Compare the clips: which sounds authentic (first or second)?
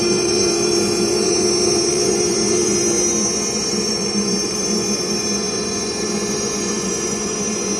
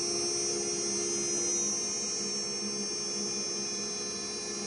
second